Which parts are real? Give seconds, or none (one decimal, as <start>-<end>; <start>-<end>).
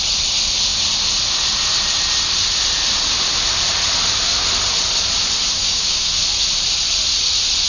0.0-5.6; 6.1-7.7